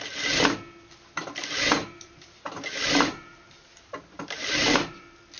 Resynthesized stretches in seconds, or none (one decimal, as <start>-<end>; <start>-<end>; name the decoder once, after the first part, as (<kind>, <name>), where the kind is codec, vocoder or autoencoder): 1.8-5.0 (vocoder, BigVGAN v2)